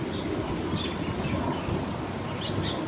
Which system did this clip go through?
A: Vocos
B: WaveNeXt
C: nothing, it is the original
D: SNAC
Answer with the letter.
C